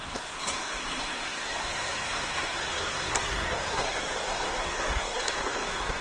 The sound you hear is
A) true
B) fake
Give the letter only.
B